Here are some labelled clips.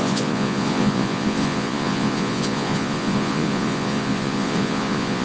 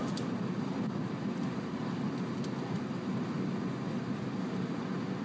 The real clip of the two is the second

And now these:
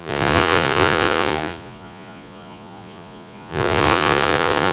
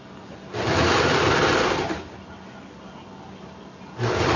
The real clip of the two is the second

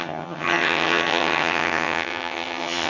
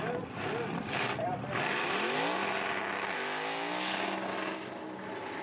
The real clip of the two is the second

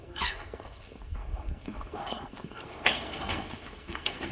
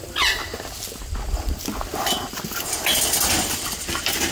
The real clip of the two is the second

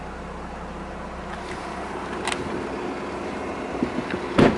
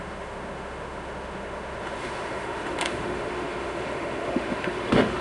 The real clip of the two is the first